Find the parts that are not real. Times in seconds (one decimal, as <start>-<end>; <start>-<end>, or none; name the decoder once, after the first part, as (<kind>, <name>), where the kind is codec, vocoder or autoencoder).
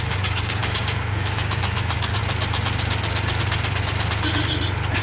0.0-2.2 (codec, DAC)